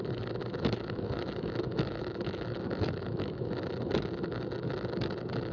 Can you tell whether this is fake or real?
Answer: fake